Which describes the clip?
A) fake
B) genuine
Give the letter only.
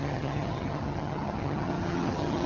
A